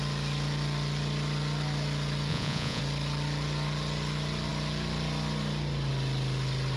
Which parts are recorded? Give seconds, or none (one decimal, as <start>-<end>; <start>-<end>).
0.0-2.3; 2.8-6.8